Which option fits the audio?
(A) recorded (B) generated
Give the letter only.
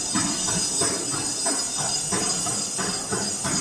A